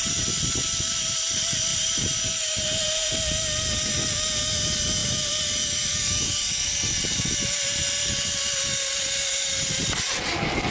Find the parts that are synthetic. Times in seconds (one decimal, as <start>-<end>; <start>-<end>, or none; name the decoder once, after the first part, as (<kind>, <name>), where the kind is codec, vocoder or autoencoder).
1.7-3.1 (vocoder, BigVGAN v2); 5.0-5.9